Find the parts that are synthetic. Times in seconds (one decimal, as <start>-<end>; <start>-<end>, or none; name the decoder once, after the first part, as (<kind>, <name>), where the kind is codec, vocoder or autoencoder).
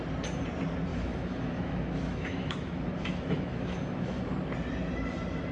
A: 0.9-4.2 (autoencoder, DAC-VAE)